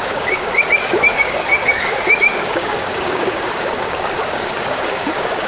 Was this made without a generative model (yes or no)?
no